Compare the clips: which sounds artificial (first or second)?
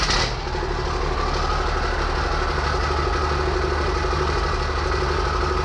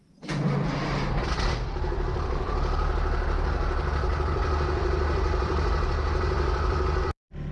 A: second